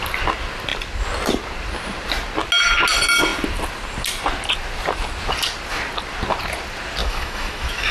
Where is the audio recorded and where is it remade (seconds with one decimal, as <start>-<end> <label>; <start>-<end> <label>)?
0.0-7.0 recorded; 7.0-7.9 remade